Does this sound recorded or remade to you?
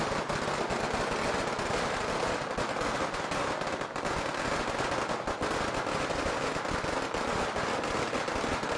recorded